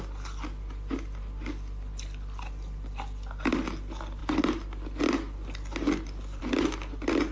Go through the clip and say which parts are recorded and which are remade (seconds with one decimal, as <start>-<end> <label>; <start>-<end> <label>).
0.0-7.3 recorded